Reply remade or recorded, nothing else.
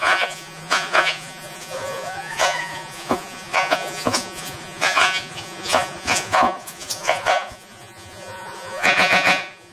remade